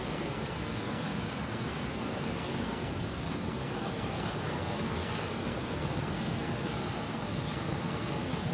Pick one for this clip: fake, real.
fake